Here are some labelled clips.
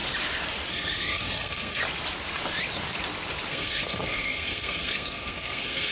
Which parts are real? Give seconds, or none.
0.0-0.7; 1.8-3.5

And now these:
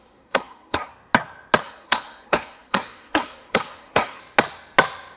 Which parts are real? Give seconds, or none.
0.9-1.6; 4.2-5.2

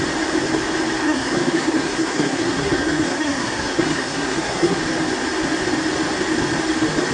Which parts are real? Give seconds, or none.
0.0-1.0; 4.8-7.1

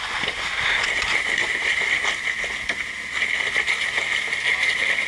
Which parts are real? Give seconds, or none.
0.0-5.1

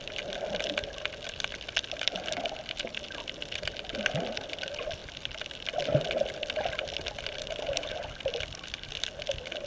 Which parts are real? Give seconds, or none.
0.0-9.7

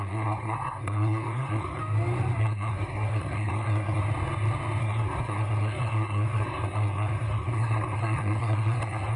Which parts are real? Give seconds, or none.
1.8-2.4; 4.0-4.8